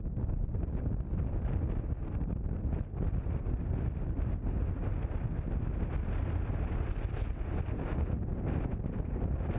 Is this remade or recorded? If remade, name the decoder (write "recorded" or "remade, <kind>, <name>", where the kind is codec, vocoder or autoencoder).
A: recorded